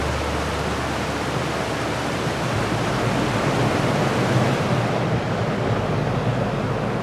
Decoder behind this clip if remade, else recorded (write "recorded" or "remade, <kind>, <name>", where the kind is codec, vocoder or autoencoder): recorded